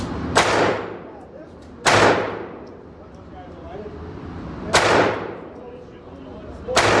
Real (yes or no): yes